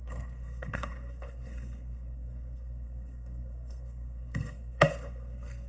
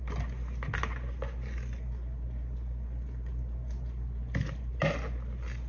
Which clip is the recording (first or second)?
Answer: second